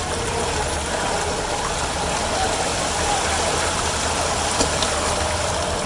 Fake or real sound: real